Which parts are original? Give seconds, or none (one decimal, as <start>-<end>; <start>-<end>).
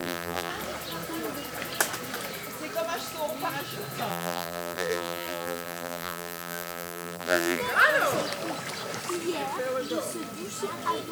0.5-4.1; 7.6-11.1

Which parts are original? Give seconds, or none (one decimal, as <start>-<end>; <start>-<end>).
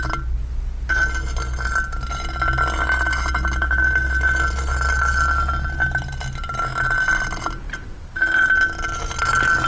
0.0-9.7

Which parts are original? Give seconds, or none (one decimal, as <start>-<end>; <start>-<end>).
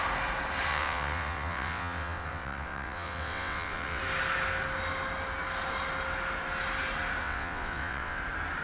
0.0-0.7; 4.0-7.2; 8.2-8.6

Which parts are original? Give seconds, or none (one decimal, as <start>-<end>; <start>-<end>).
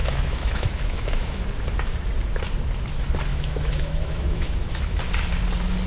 1.4-3.3; 5.0-5.9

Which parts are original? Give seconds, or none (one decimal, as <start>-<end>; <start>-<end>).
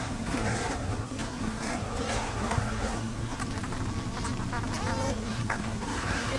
3.4-5.1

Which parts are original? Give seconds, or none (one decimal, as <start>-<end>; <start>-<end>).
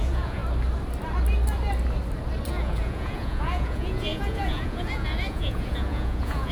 0.4-2.5